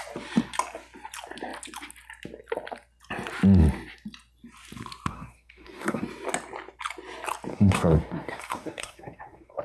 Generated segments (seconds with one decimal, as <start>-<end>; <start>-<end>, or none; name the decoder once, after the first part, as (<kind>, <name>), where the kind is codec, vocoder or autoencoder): 5.1-6.0 (codec, SNAC); 7.5-9.6